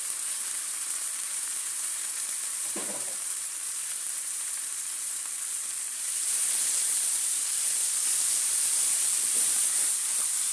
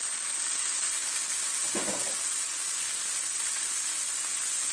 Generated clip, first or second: first